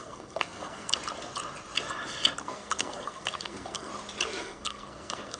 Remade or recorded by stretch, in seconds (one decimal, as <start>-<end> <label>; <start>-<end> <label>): 0.0-1.0 remade; 1.0-2.4 recorded; 2.4-3.9 remade; 3.9-4.4 recorded; 4.4-5.4 remade